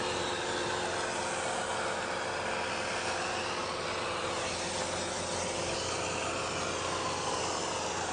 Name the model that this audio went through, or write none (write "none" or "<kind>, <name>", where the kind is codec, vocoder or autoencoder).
none